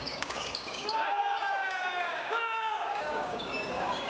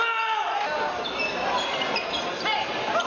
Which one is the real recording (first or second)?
second